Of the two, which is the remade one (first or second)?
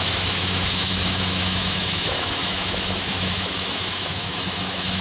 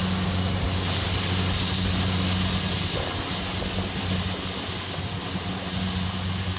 first